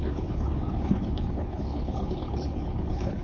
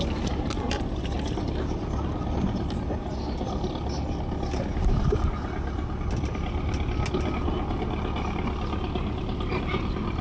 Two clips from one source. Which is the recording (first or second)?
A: second